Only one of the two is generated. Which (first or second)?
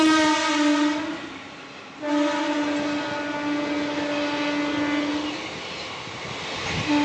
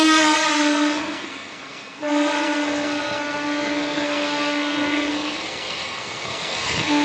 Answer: second